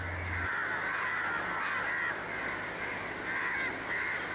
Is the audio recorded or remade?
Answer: recorded